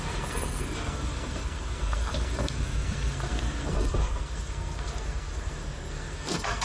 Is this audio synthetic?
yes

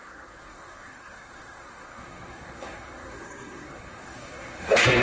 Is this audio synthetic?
yes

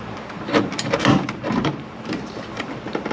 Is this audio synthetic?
yes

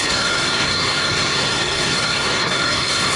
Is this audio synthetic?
yes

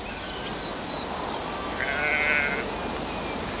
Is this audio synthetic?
no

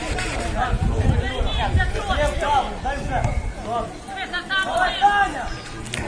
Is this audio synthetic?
no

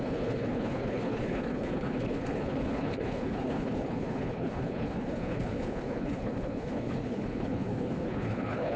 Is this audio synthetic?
yes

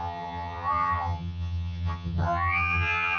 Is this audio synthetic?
yes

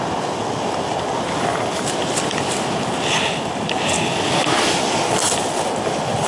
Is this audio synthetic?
no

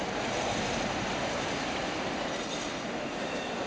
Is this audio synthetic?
yes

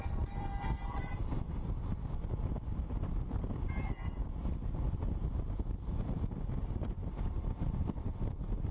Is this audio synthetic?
yes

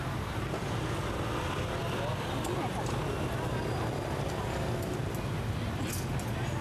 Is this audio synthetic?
no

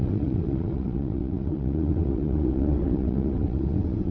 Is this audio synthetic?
yes